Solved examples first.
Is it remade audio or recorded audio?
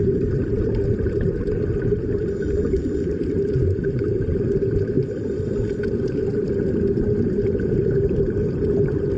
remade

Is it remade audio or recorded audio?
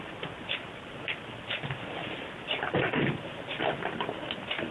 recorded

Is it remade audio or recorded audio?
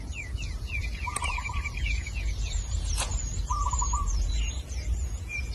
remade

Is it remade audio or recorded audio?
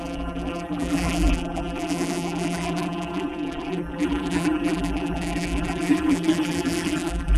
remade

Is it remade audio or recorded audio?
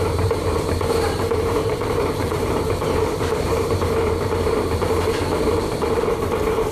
remade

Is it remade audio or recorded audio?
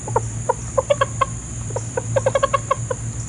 recorded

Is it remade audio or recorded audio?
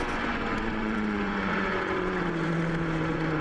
remade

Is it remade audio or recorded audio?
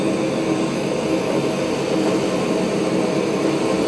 recorded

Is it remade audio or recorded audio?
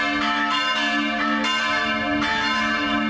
recorded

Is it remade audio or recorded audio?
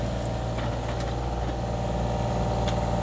recorded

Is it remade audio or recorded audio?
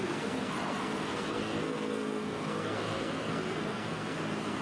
remade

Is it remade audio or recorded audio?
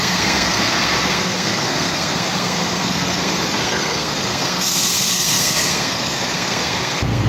remade